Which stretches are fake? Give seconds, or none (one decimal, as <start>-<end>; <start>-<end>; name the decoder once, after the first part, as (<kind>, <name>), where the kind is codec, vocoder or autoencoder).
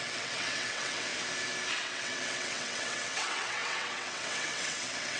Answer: 0.0-1.1 (vocoder, WaveNeXt); 1.8-5.2